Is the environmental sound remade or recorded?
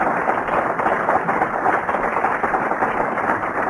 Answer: remade